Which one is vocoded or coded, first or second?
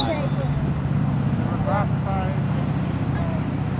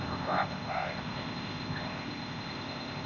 second